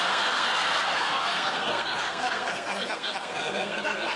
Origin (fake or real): fake